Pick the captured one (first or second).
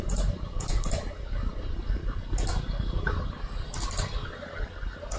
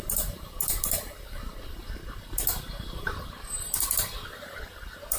first